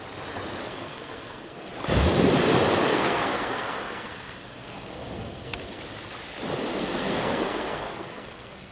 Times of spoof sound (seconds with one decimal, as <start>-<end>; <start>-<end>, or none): 0.6-1.7; 2.9-5.8; 6.7-8.7